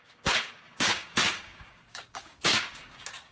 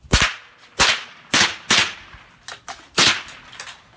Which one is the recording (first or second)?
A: second